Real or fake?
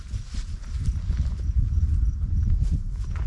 real